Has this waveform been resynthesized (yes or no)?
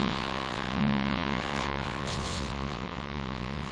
yes